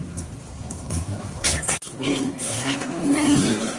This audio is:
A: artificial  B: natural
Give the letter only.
A